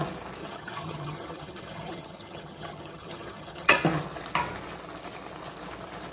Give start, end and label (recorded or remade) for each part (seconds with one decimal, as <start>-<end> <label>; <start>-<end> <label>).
0.0-0.4 recorded; 0.4-3.8 remade; 3.8-6.1 recorded